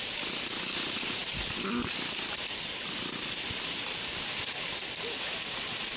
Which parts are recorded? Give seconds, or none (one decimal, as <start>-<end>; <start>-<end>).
0.0-1.2; 4.8-6.0